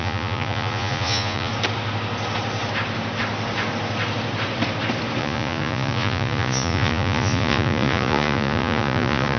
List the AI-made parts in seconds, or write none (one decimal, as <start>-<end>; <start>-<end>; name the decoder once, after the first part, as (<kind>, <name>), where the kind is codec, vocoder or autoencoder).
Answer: 0.0-1.5 (vocoder, Vocos); 5.2-9.4